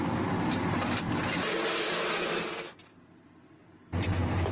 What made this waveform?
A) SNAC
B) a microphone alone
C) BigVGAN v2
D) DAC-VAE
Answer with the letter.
B